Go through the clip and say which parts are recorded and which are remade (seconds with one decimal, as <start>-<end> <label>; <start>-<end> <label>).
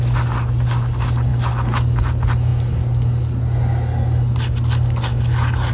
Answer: 0.0-5.7 recorded